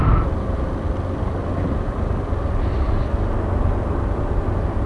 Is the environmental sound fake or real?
real